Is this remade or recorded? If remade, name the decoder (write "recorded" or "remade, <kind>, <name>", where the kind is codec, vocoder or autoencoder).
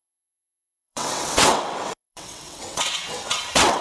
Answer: remade, vocoder, WaveNeXt